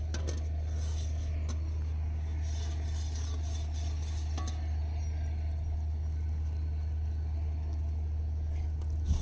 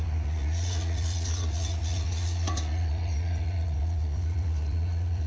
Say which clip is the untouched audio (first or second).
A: first